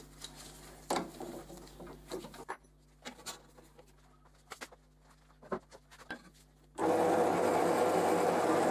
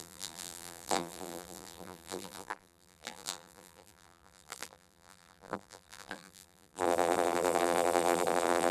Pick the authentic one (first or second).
first